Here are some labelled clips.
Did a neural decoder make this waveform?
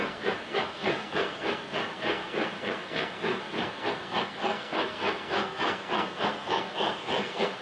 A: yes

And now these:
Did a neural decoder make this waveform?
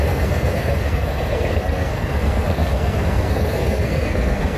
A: yes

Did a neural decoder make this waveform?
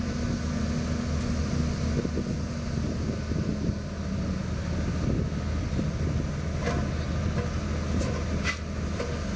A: no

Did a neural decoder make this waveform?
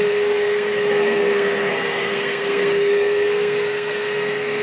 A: yes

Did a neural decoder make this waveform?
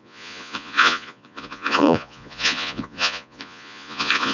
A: yes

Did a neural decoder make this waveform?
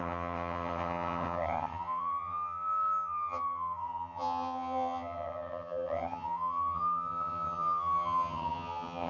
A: yes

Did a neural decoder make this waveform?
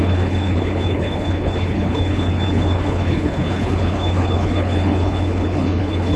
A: yes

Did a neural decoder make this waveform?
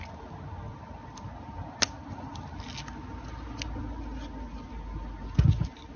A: no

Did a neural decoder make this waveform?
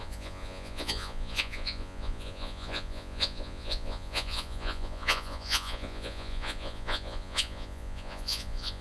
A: yes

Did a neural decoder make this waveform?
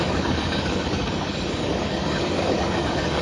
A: yes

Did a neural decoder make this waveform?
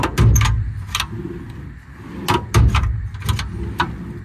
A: no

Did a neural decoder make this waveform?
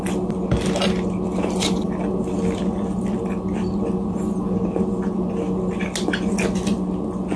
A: no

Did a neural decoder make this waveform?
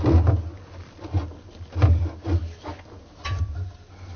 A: no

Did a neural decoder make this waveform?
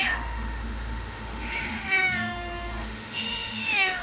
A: yes